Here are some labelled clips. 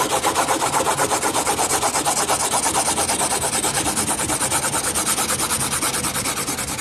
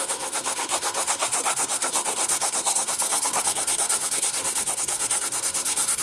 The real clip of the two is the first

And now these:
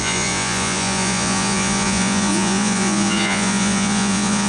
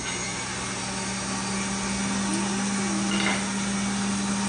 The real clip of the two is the second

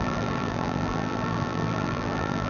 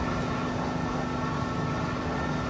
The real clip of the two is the second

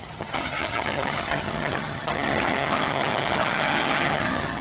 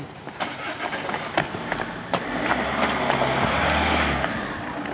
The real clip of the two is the second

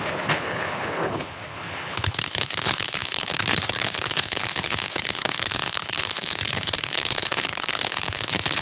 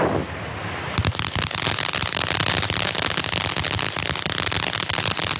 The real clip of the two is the second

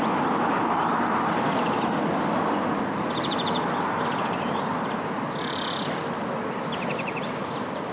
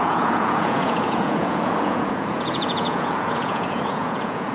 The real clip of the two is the first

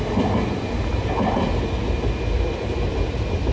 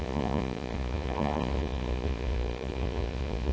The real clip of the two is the first